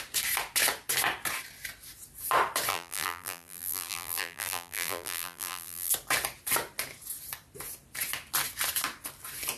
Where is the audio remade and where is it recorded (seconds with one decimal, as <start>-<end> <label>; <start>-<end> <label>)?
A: 0.0-2.7 recorded; 2.7-5.9 remade; 5.9-9.6 recorded